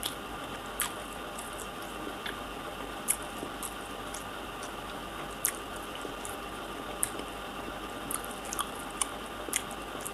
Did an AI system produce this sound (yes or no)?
yes